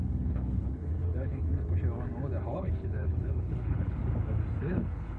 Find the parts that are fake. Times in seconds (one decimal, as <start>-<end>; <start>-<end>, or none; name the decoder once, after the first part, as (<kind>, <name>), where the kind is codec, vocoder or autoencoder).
0.0-1.5 (codec, HILCodec); 2.4-4.0; 4.6-5.2